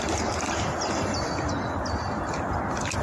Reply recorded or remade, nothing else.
recorded